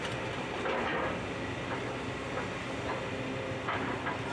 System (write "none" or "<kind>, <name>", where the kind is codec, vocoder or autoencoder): none